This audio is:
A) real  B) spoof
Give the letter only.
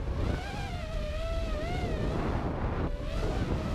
A